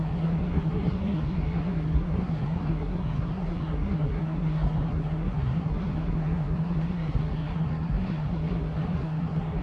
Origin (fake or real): fake